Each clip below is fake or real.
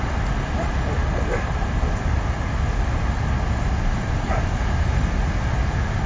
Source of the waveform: real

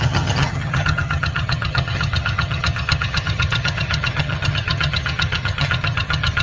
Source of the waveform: fake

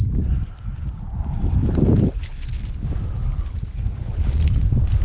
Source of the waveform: real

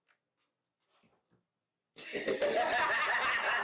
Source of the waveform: real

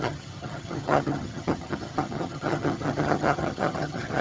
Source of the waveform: fake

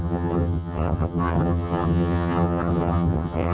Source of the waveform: fake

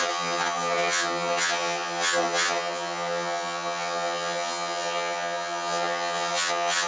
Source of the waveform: fake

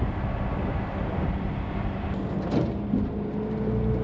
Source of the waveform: real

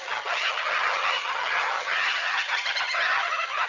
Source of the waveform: fake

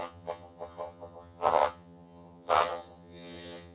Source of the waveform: fake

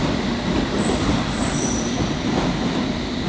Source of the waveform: real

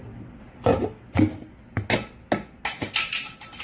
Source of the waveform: real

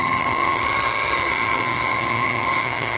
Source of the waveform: fake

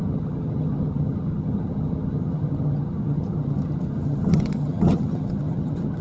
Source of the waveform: fake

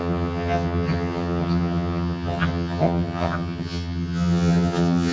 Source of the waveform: fake